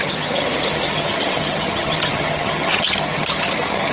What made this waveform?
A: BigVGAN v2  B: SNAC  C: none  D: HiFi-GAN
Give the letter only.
D